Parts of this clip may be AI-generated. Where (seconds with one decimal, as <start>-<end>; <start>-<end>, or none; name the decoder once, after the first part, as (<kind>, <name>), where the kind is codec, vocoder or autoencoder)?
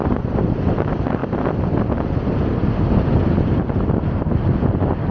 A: 0.0-1.2 (vocoder, BigVGAN v2); 4.3-5.1